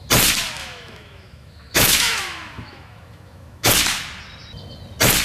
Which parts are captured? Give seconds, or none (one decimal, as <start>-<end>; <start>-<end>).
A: 0.0-0.6; 3.7-5.2